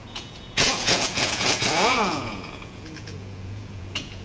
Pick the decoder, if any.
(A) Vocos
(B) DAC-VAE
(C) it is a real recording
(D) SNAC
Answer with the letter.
A